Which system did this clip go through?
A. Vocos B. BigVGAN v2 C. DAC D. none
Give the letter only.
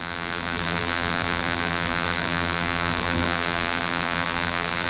B